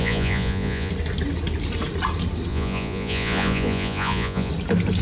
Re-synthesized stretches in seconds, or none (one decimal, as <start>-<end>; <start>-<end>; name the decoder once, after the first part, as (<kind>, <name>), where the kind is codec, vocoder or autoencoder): 0.0-0.9 (vocoder, Vocos); 2.5-4.5